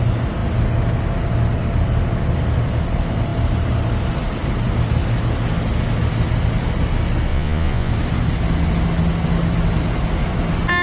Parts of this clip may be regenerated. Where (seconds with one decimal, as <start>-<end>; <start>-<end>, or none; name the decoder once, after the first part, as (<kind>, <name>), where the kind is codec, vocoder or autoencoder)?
7.3-7.9 (vocoder, Vocos)